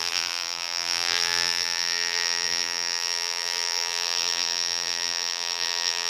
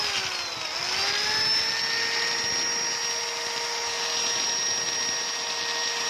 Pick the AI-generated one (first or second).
first